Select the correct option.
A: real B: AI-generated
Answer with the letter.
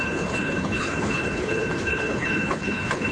B